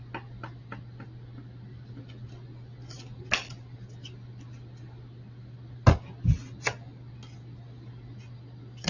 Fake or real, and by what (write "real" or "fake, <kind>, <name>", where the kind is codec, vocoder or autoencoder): real